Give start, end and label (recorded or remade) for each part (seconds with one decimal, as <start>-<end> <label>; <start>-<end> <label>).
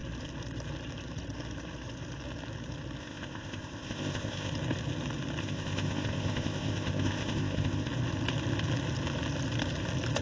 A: 0.0-3.0 recorded; 3.0-4.5 remade; 4.5-5.4 recorded; 5.4-7.9 remade; 7.9-10.2 recorded